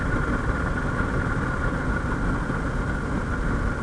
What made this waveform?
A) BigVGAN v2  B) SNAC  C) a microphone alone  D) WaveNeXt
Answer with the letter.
C